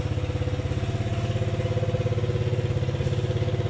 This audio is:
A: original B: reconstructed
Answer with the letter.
A